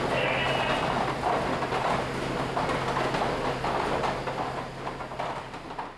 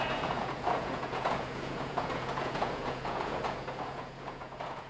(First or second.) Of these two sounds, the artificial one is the second